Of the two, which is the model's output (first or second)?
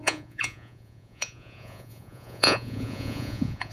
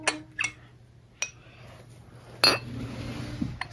first